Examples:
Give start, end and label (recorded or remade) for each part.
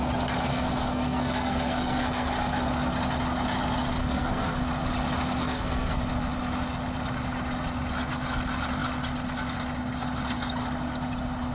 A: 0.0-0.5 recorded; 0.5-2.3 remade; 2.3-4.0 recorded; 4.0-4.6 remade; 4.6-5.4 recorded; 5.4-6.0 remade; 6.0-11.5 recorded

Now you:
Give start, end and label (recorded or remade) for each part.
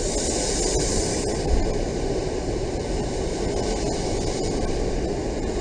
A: 0.0-1.9 recorded; 1.9-5.6 remade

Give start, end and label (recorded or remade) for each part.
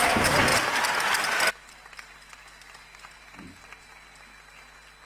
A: 0.0-5.1 recorded